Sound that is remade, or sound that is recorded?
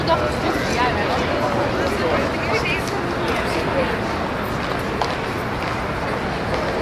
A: recorded